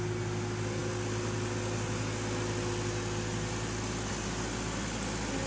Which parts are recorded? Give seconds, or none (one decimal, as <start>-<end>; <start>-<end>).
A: 0.0-5.5